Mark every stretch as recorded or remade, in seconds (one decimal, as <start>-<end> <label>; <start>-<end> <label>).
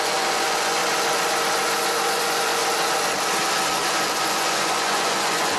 0.0-0.8 remade; 0.8-2.1 recorded; 2.1-2.6 remade; 2.6-4.1 recorded; 4.1-5.6 remade